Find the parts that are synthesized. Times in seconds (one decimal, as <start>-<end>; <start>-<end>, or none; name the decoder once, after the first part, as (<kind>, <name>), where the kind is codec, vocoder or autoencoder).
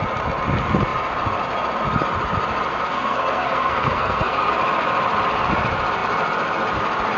2.7-4.5 (codec, SNAC)